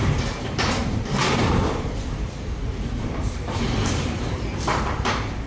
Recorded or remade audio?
remade